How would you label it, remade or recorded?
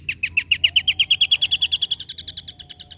recorded